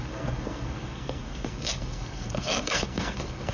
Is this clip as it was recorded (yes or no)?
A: no